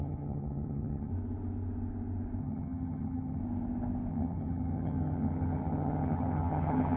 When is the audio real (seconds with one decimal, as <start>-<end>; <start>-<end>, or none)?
1.1-2.4; 3.4-4.1